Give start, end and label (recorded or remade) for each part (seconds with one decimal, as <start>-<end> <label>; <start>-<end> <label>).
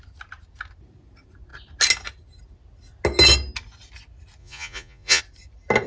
0.0-4.4 recorded; 4.4-5.2 remade; 5.2-5.9 recorded